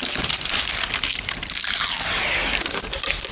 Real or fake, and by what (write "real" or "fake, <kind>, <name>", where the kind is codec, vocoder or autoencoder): real